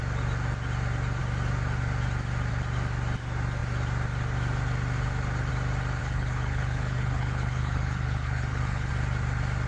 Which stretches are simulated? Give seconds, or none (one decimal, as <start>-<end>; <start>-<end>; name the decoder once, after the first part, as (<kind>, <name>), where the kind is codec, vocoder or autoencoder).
6.0-8.9 (codec, HILCodec)